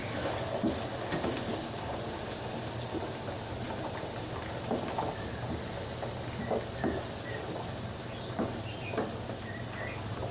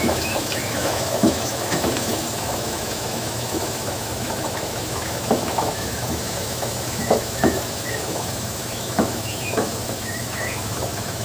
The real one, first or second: first